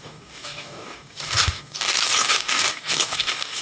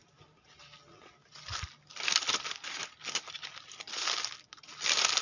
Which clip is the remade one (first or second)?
first